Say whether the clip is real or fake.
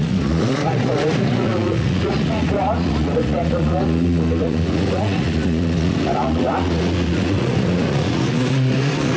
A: fake